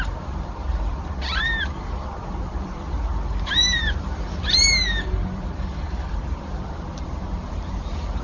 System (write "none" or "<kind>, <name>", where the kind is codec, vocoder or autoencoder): vocoder, BigVGAN v2